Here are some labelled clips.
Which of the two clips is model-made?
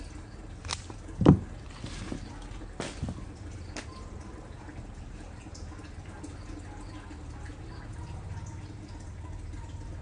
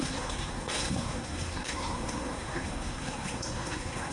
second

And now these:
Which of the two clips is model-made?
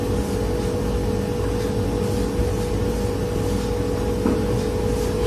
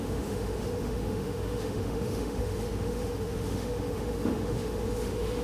second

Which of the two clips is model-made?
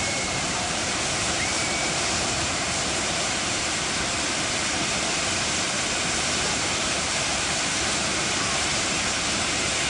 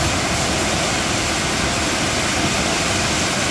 first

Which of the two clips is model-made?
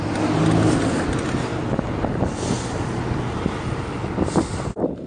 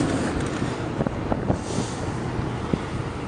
second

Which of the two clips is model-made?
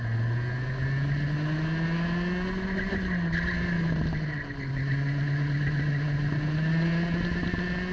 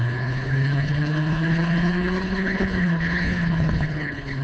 second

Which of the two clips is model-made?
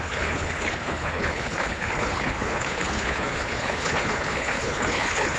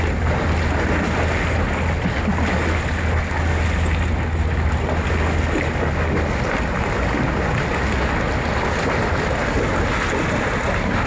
first